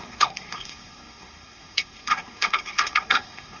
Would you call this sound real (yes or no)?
no